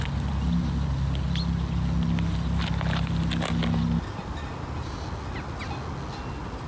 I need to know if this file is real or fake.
real